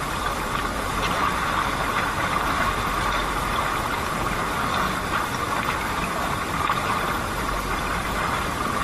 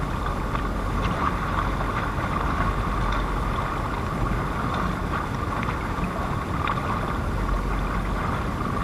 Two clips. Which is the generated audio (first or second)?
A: first